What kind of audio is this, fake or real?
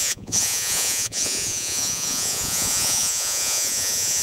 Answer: fake